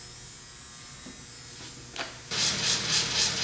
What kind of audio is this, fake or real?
real